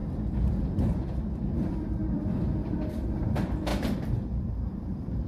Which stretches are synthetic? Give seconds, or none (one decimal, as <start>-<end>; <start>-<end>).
0.6-5.3